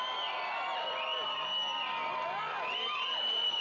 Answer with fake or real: real